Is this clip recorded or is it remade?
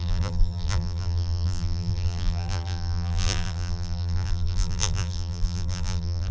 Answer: remade